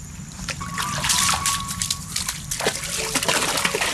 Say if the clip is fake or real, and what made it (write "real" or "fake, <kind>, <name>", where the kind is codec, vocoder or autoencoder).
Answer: fake, vocoder, BigVGAN v2